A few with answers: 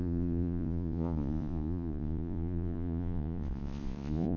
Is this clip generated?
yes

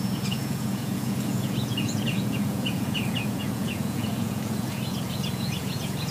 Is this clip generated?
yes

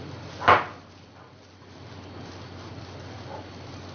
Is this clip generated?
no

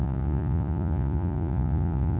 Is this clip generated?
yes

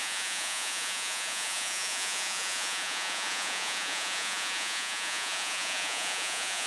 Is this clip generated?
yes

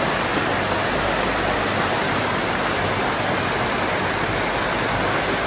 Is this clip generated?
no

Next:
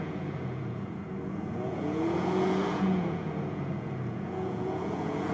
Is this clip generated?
yes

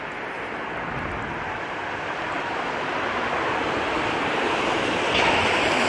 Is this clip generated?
no